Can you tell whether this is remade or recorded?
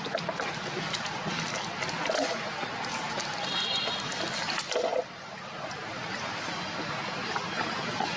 recorded